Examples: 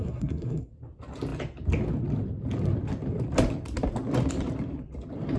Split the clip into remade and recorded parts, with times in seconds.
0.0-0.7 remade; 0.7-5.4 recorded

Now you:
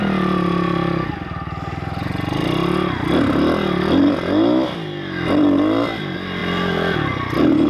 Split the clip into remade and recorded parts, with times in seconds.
0.0-7.7 recorded

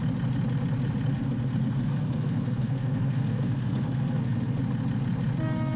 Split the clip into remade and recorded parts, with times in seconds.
0.0-1.1 recorded; 1.1-4.6 remade; 4.6-5.8 recorded

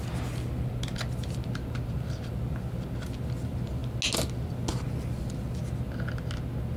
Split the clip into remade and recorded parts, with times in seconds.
0.0-6.8 recorded